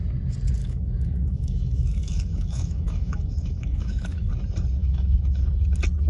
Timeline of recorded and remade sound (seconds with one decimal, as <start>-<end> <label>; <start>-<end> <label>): 0.0-0.6 recorded; 0.6-4.3 remade; 4.3-4.8 recorded; 4.8-5.4 remade; 5.4-6.1 recorded